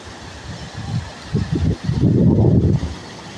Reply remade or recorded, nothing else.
recorded